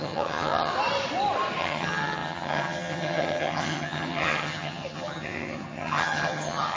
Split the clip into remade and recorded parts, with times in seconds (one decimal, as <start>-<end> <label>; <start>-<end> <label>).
0.0-0.7 remade; 0.7-1.6 recorded; 1.6-6.8 remade